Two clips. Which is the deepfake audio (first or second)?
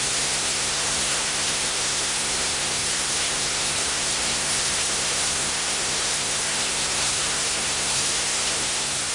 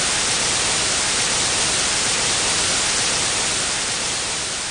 first